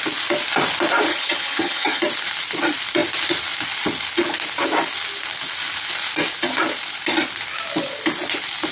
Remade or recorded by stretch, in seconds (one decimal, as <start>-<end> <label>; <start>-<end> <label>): 0.0-1.1 recorded; 1.1-2.0 remade; 2.0-8.7 recorded